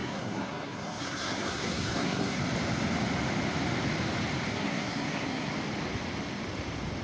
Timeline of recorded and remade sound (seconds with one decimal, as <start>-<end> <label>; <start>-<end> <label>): 0.0-2.4 remade; 2.4-4.5 recorded; 4.5-5.5 remade; 5.5-7.0 recorded